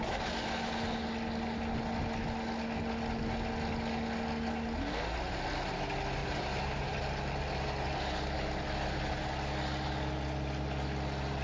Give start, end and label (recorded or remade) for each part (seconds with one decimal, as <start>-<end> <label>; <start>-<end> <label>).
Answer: 0.0-6.2 recorded; 6.2-7.0 remade; 7.0-11.4 recorded